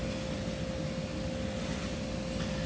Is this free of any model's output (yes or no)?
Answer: yes